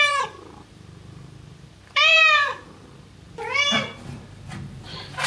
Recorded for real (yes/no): no